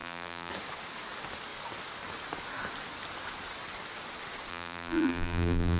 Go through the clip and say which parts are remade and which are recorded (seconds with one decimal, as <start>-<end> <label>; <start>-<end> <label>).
0.0-0.5 remade; 0.5-4.5 recorded; 4.5-5.8 remade